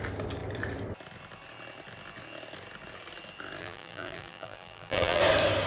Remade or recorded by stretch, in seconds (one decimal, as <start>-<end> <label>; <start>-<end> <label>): 0.0-3.6 recorded; 3.6-5.2 remade; 5.2-5.7 recorded

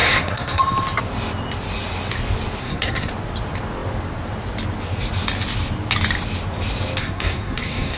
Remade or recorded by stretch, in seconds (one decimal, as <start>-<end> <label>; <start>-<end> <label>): 0.0-0.6 remade; 0.6-2.6 recorded; 2.6-3.1 remade; 3.1-7.0 recorded; 7.0-8.0 remade

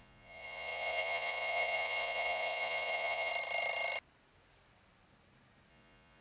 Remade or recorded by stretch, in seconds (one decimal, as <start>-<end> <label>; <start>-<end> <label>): 0.0-3.3 remade; 3.3-5.7 recorded; 5.7-6.2 remade